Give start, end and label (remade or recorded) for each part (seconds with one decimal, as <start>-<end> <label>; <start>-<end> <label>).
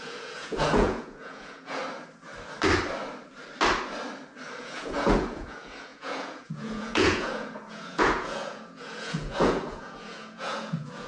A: 0.0-1.8 remade; 1.8-4.6 recorded; 4.6-11.1 remade